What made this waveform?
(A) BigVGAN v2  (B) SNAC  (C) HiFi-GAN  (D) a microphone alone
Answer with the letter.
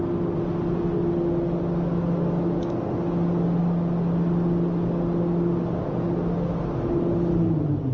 D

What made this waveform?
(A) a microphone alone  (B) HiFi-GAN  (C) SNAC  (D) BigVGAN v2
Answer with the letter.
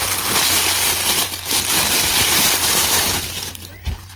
D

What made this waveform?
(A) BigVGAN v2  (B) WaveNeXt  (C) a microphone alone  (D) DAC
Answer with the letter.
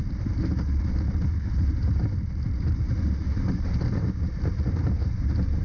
A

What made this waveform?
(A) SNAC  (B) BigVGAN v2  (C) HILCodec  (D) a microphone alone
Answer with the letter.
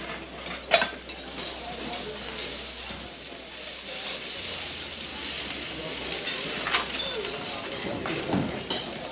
D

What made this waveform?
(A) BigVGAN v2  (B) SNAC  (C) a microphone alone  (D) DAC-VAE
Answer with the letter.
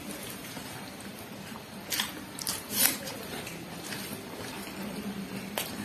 A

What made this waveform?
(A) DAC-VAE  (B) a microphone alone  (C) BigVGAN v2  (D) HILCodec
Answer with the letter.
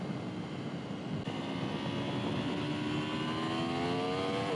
B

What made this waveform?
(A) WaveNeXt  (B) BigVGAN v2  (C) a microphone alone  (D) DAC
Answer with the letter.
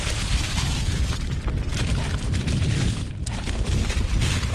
B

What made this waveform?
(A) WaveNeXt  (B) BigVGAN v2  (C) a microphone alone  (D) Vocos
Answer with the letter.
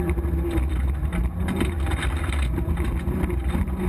B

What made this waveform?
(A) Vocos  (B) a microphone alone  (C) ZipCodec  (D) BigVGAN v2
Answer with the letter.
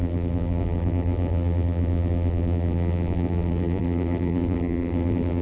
D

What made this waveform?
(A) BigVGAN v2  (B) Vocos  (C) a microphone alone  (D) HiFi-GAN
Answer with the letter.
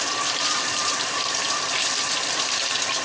A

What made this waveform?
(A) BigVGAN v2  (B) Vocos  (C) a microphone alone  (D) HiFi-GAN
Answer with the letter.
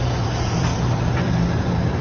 A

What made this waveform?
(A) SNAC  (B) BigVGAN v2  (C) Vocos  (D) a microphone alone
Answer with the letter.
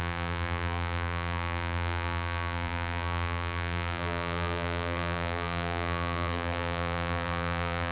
B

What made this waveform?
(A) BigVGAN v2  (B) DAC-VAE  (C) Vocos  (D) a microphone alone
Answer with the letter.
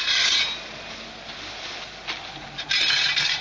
D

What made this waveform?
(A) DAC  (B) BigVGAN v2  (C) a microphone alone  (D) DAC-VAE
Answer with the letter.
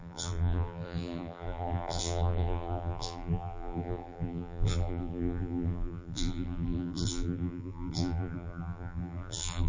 B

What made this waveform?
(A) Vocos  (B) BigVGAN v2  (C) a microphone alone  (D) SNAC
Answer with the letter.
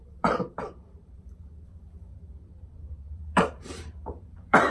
B